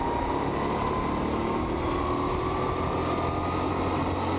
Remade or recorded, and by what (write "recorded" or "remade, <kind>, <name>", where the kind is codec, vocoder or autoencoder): recorded